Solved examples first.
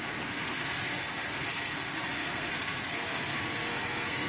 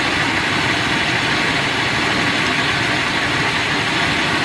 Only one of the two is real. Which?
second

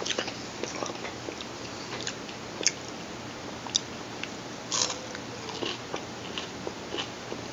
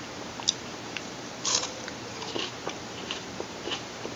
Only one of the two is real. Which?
first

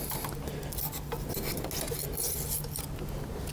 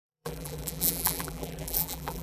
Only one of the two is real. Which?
first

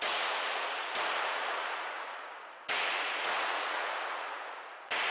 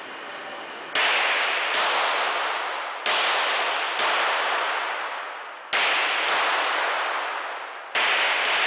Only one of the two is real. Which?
second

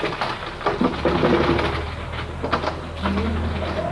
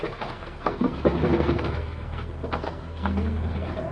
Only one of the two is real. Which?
first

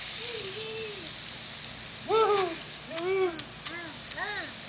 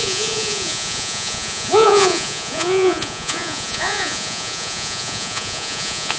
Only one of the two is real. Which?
first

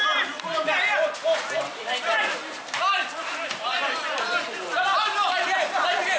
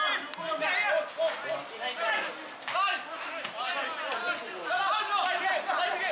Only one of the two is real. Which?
second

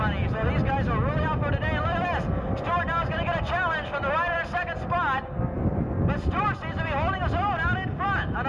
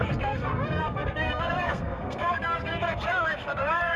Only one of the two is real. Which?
first